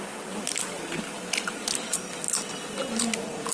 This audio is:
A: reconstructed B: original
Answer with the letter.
B